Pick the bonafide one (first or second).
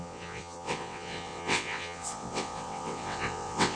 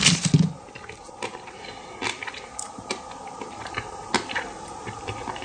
second